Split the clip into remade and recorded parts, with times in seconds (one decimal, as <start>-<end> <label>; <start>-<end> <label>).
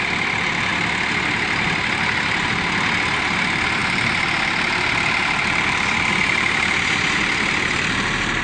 0.0-8.4 recorded